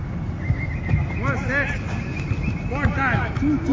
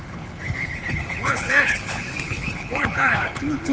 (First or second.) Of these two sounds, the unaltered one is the first